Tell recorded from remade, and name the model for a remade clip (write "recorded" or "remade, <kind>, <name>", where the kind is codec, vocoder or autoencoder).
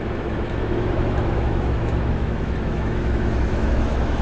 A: remade, autoencoder, DAC-VAE